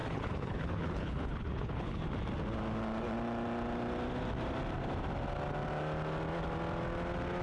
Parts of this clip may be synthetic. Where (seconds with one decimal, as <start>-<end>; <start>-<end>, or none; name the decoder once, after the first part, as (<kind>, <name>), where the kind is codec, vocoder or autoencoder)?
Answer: 0.0-2.0 (codec, HILCodec)